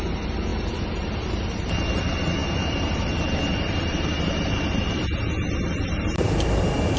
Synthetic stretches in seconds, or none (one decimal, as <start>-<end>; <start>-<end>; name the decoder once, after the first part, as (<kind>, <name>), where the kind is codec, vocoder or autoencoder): 0.0-7.0 (vocoder, BigVGAN v2)